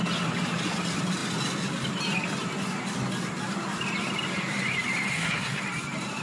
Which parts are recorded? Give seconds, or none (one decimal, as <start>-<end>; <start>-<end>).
0.0-5.1; 5.6-6.2